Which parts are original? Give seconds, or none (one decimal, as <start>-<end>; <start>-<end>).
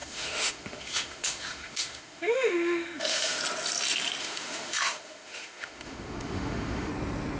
3.4-4.2; 6.9-7.4